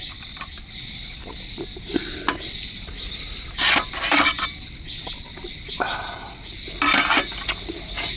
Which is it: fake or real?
real